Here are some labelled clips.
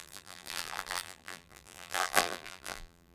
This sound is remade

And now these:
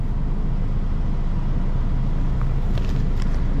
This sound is recorded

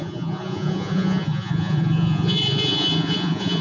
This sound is remade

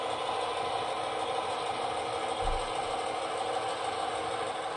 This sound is recorded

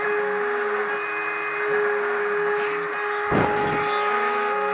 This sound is recorded